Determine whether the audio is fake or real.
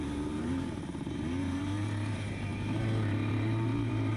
fake